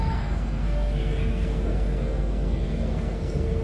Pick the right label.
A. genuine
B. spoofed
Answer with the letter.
B